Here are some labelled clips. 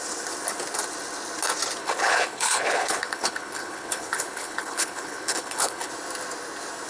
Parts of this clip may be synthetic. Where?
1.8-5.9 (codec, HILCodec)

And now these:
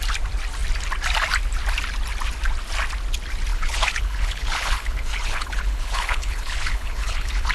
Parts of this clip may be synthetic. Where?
3.5-7.5 (codec, HILCodec)

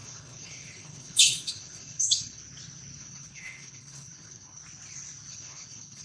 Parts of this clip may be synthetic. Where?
0.0-2.4 (codec, HILCodec); 3.0-4.6; 5.3-6.0

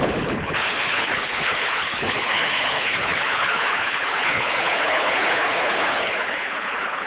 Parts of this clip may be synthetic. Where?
0.0-7.1 (codec, HILCodec)

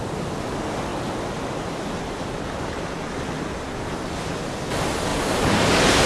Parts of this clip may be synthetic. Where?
none

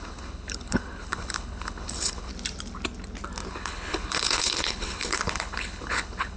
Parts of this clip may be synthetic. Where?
0.0-2.3 (codec, HILCodec); 3.5-6.4